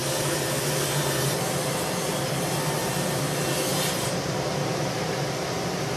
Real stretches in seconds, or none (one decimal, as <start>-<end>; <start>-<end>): 0.6-3.7; 5.0-6.0